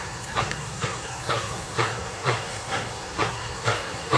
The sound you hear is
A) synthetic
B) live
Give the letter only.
A